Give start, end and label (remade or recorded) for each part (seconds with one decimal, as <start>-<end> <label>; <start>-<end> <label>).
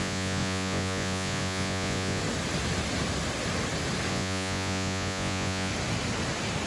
0.0-2.2 remade; 2.2-4.1 recorded; 4.1-5.7 remade; 5.7-6.7 recorded